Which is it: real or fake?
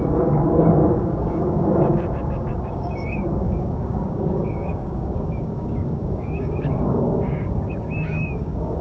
fake